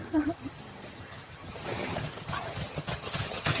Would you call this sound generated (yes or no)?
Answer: yes